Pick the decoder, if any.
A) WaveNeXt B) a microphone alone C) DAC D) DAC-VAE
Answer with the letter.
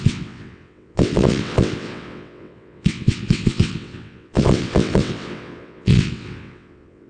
A